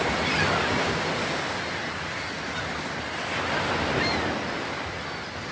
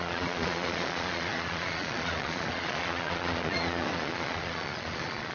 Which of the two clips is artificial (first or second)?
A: second